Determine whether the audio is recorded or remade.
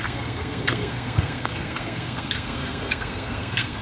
remade